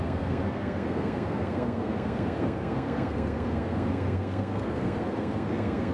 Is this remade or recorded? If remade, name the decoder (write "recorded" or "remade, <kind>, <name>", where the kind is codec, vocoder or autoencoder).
remade, codec, SNAC